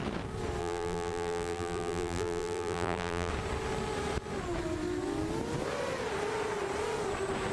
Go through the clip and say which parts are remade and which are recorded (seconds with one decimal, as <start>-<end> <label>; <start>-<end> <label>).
0.0-0.6 recorded; 0.6-3.3 remade; 3.3-7.5 recorded